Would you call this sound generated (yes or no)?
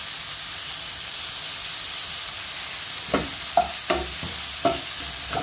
no